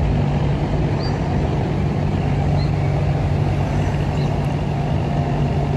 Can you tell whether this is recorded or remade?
recorded